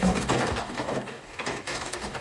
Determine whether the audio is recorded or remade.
remade